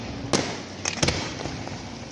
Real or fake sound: real